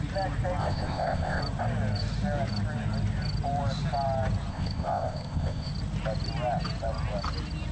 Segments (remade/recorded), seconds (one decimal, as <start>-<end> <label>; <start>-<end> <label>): 0.0-0.6 recorded; 0.6-1.4 remade; 1.4-4.5 recorded; 4.5-5.7 remade; 5.7-7.7 recorded